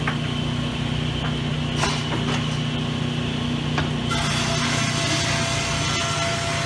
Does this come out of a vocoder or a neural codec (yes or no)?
no